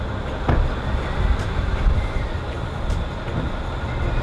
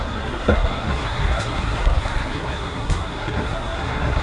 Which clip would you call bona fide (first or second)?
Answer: first